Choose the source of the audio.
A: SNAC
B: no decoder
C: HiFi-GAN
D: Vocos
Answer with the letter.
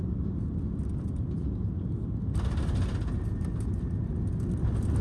B